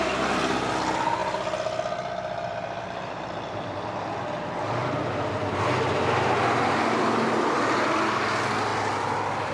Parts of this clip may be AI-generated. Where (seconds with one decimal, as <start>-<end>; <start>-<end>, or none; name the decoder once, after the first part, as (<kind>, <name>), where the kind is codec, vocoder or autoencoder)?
none